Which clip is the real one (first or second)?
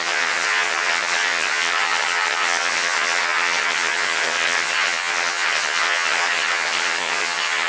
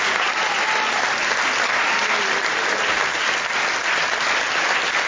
second